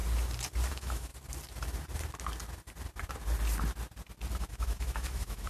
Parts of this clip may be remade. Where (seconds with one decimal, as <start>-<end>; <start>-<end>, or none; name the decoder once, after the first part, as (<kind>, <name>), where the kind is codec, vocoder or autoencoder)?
0.7-1.1 (autoencoder, DAC-VAE); 4.4-5.5